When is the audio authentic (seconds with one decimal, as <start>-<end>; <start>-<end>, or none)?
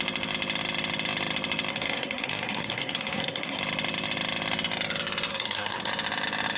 0.0-1.7; 3.6-5.3; 5.9-6.6